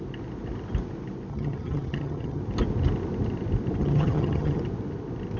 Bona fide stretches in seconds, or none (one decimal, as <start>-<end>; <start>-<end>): 0.0-1.3; 2.4-3.8; 4.6-5.4